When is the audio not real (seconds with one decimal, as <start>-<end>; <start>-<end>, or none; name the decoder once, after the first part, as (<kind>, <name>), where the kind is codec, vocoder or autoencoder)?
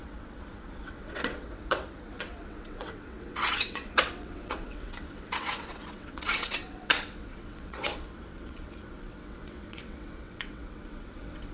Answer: 0.0-11.5 (vocoder, WaveNeXt)